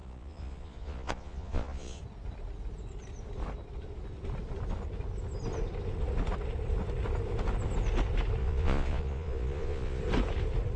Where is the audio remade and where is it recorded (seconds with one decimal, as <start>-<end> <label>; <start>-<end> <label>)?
0.0-2.0 remade; 2.0-8.4 recorded; 8.4-10.0 remade; 10.0-10.8 recorded